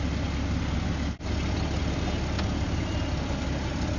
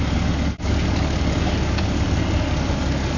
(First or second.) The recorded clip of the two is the first